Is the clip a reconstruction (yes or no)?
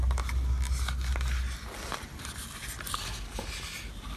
no